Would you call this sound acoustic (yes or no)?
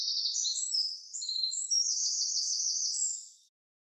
no